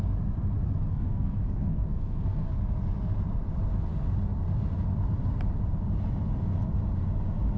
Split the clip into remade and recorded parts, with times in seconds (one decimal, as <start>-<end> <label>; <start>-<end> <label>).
0.0-0.9 recorded; 0.9-2.5 remade; 2.5-7.6 recorded